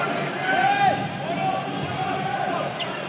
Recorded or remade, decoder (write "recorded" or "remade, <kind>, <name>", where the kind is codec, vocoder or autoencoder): recorded